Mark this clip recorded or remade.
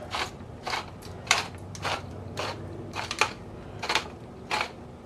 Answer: recorded